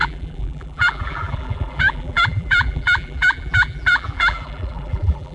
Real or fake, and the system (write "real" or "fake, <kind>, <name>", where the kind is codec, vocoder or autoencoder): fake, vocoder, BigVGAN v2